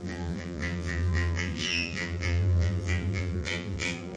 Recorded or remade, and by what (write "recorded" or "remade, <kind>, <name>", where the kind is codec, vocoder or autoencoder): remade, vocoder, BigVGAN v2